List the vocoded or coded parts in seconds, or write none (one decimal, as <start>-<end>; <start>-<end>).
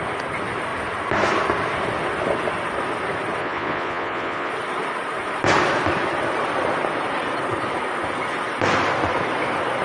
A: 3.4-4.5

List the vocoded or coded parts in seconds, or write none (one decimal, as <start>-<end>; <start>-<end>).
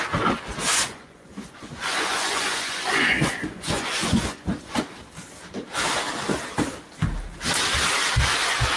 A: 0.7-4.8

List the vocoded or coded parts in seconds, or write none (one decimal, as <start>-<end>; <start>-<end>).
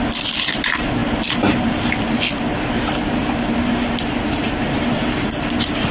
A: none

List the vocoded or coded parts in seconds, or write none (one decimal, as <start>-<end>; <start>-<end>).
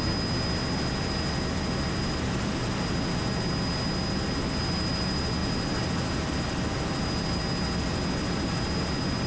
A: none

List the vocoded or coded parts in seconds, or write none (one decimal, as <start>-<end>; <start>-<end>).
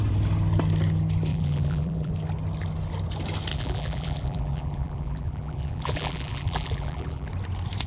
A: 1.3-2.1; 3.5-7.3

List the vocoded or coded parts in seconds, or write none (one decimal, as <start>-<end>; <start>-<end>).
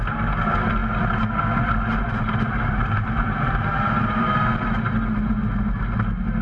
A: 1.9-4.7